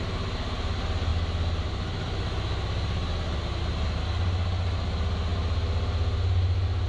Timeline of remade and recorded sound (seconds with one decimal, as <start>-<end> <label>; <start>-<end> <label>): 0.0-6.9 recorded